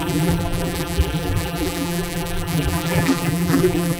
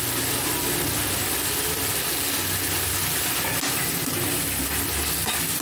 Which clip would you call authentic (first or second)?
second